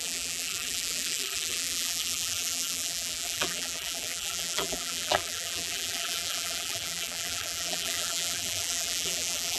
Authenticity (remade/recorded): remade